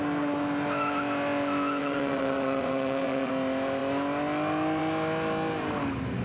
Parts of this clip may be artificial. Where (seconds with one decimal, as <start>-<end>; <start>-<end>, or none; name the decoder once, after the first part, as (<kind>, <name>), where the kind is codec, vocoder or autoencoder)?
1.8-3.3 (vocoder, WaveNeXt)